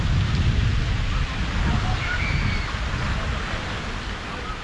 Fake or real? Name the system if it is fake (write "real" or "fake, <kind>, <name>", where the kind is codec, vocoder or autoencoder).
real